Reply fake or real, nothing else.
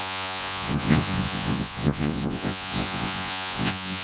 fake